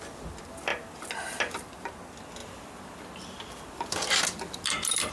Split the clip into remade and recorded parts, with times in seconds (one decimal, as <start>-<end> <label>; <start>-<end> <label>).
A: 0.0-0.7 recorded; 0.7-1.9 remade; 1.9-2.4 recorded; 2.4-5.1 remade